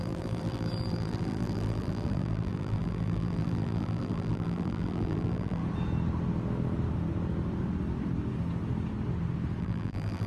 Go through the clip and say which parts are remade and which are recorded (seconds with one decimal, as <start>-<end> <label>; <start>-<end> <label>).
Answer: 0.0-5.6 remade; 5.6-9.6 recorded; 9.6-10.3 remade

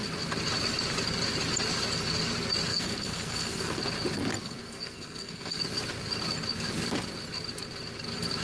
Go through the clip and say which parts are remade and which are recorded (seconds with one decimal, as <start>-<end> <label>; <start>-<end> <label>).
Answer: 0.0-2.7 recorded; 2.7-3.8 remade; 3.8-4.3 recorded; 4.3-5.6 remade; 5.6-8.4 recorded

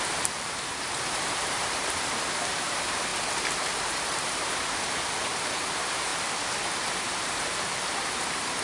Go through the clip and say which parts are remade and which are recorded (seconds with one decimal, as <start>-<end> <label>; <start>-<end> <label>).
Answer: 0.0-3.1 remade; 3.1-3.8 recorded; 3.8-6.1 remade; 6.1-7.2 recorded; 7.2-8.6 remade

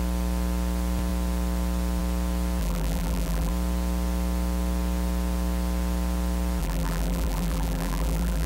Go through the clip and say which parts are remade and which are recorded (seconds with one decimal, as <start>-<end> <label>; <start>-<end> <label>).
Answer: 0.0-2.6 recorded; 2.6-3.5 remade; 3.5-6.6 recorded; 6.6-8.5 remade

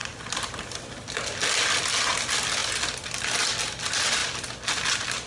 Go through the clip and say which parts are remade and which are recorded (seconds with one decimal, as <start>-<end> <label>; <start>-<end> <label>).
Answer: 0.0-5.3 recorded

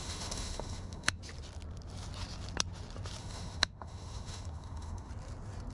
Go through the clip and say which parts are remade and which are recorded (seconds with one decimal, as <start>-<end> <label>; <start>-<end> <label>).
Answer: 0.0-1.2 remade; 1.2-3.2 recorded; 3.2-5.1 remade; 5.1-5.7 recorded

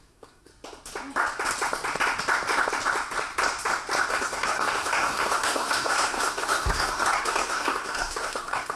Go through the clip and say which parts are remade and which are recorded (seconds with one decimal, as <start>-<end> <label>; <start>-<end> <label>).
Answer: 0.0-0.5 remade; 0.5-4.1 recorded; 4.1-8.8 remade

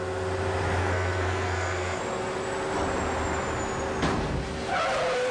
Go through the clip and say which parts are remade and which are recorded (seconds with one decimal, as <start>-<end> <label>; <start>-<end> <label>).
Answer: 0.0-0.8 recorded; 0.8-2.0 remade; 2.0-5.3 recorded